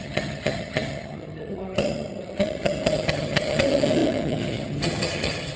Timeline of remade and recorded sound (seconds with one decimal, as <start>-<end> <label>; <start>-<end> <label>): 0.0-5.6 remade